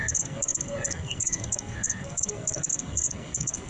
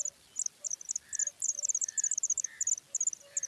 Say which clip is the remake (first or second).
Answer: first